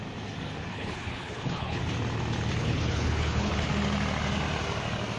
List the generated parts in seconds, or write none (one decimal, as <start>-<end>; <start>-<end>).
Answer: 0.7-1.8; 2.6-3.7